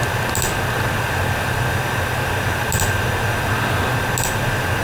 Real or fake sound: real